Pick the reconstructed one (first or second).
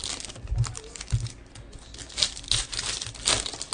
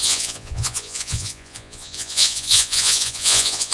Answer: second